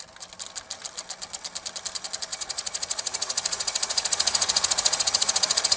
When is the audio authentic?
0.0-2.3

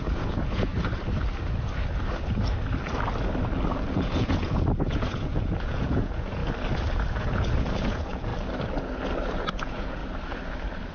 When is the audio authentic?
0.7-3.9; 6.4-7.1; 8.3-9.5; 10.0-10.9